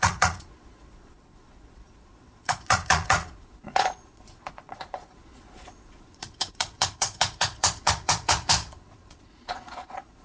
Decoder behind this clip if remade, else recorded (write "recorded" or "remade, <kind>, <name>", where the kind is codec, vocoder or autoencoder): remade, vocoder, Vocos